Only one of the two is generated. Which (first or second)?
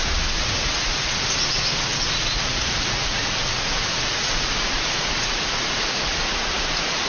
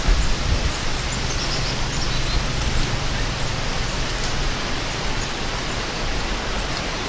first